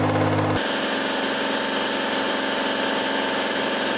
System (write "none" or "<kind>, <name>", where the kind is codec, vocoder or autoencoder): none